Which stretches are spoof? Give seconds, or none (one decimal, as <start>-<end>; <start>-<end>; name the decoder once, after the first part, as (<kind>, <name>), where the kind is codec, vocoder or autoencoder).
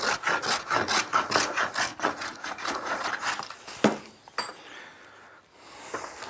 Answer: 1.9-3.0 (vocoder, Vocos)